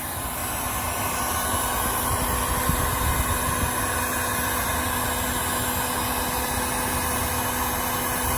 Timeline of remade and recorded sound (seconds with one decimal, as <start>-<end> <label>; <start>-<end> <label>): 0.0-8.4 recorded